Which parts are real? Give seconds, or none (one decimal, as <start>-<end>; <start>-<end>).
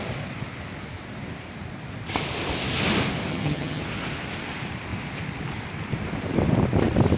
0.0-3.3; 3.8-7.2